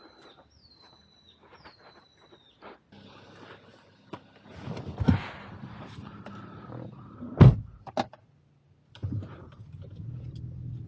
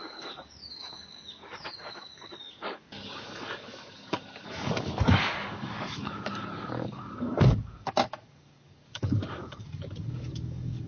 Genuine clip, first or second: first